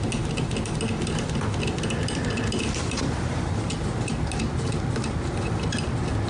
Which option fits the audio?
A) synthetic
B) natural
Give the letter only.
B